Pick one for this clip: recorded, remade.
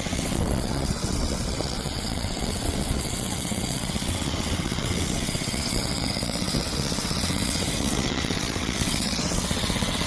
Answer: remade